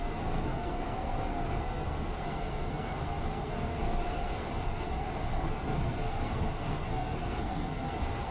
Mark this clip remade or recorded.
remade